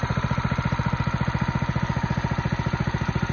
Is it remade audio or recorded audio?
recorded